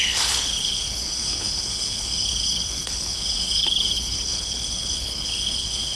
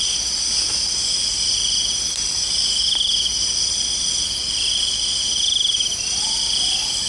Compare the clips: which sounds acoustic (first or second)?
second